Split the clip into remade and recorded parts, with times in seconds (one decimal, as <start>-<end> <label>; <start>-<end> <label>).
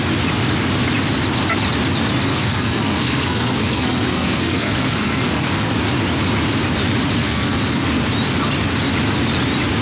0.0-2.3 recorded; 2.3-5.7 remade; 5.7-7.2 recorded; 7.2-7.9 remade; 7.9-9.8 recorded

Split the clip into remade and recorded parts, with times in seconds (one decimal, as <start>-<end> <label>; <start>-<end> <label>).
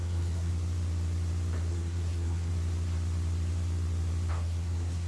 0.0-0.5 remade; 0.5-1.7 recorded; 1.7-2.5 remade; 2.5-4.3 recorded; 4.3-5.1 remade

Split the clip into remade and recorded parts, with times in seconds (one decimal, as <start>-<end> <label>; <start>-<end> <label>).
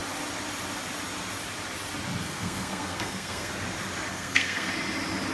0.0-2.2 recorded; 2.2-3.5 remade; 3.5-4.1 recorded; 4.1-4.7 remade; 4.7-5.3 recorded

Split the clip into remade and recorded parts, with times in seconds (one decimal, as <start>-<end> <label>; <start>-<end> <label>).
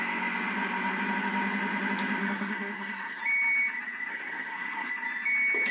0.0-2.2 recorded; 2.2-3.2 remade; 3.2-4.1 recorded; 4.1-4.9 remade; 4.9-5.7 recorded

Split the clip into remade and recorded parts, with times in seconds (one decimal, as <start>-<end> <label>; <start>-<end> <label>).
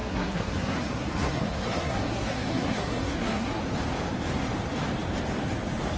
0.0-3.6 remade; 3.6-6.0 recorded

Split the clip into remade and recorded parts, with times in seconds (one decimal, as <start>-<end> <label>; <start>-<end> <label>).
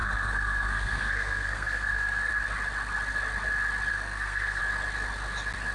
0.0-2.3 remade; 2.3-3.9 recorded; 3.9-4.6 remade; 4.6-5.7 recorded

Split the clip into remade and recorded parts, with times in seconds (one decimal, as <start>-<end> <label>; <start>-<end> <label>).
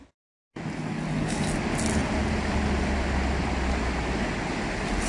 0.0-5.1 recorded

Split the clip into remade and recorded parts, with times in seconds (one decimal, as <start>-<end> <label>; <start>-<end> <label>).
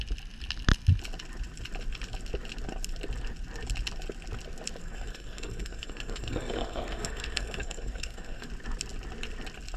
0.0-4.8 recorded; 4.8-8.5 remade; 8.5-9.8 recorded